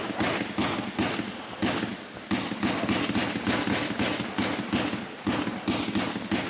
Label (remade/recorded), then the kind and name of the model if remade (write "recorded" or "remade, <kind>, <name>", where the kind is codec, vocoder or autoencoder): recorded